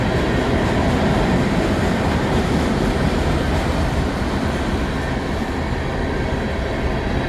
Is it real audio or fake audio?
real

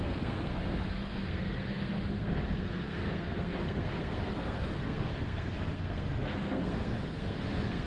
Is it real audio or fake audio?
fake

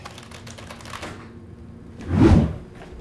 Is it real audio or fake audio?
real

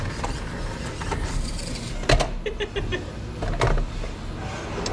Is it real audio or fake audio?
real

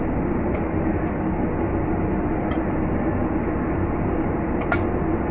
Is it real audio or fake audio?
real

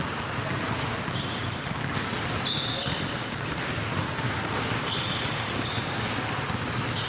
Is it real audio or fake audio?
real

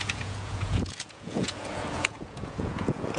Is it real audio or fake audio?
fake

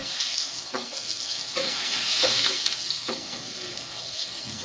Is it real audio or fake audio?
fake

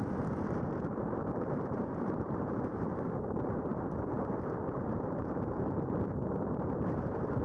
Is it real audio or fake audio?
fake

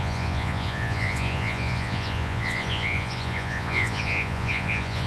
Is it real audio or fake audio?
fake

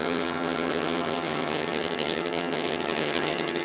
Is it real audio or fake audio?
fake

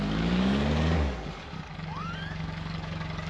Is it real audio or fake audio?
fake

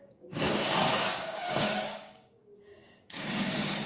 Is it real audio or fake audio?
fake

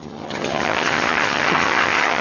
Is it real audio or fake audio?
fake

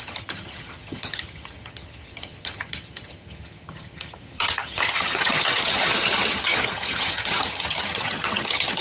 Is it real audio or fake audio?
fake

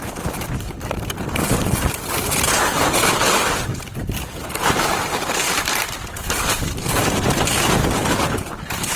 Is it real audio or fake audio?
fake